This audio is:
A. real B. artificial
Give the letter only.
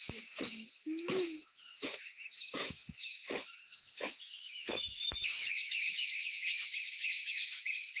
B